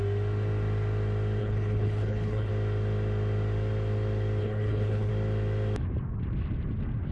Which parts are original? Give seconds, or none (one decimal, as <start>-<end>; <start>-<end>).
0.0-1.4; 2.5-4.4; 5.1-7.1